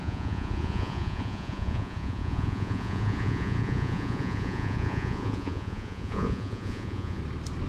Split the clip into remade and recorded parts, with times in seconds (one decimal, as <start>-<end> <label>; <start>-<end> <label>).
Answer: 0.0-7.2 remade; 7.2-7.7 recorded